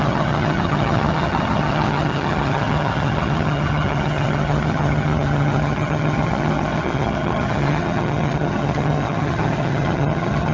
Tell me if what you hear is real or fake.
fake